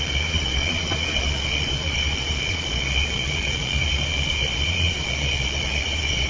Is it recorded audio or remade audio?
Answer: remade